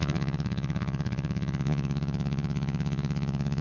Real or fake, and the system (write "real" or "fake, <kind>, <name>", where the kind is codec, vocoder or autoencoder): fake, vocoder, Vocos